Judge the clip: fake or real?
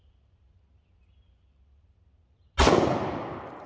real